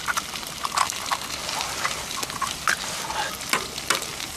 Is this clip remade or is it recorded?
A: recorded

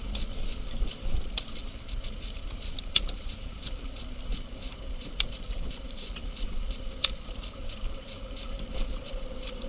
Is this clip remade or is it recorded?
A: remade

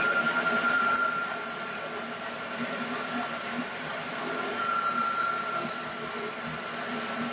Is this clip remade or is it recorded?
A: remade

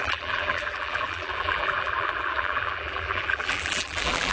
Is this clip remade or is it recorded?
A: remade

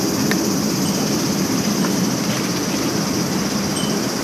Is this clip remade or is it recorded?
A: recorded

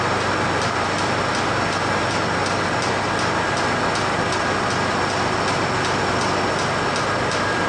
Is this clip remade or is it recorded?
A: recorded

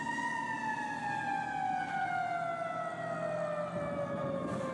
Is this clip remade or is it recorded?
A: recorded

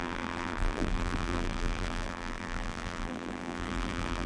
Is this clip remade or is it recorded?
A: remade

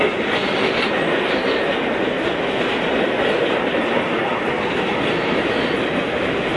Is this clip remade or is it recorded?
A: recorded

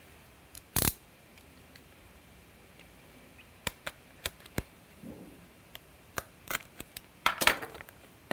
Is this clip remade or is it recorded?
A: remade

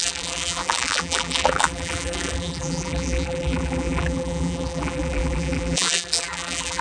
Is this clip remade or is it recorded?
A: remade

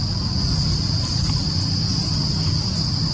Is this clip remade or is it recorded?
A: recorded